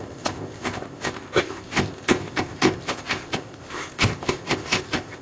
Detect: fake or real fake